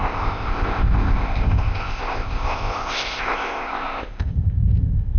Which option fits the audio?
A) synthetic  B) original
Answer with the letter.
A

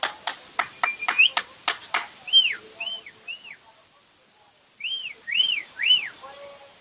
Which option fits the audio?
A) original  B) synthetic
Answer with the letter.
A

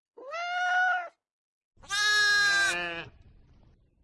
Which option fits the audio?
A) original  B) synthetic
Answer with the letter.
A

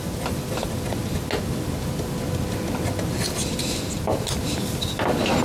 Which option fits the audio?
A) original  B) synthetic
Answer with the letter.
A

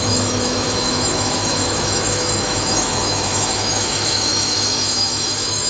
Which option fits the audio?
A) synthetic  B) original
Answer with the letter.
A